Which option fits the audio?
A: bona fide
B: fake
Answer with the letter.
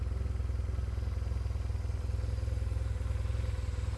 A